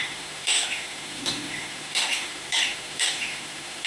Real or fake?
fake